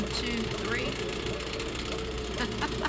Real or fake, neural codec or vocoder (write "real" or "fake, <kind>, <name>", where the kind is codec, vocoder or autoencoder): real